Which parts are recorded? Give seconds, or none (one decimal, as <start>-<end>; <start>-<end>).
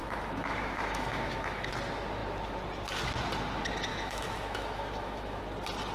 1.7-3.9; 5.4-5.9